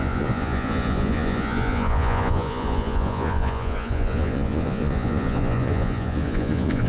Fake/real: fake